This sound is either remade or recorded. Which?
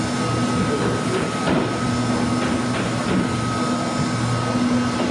recorded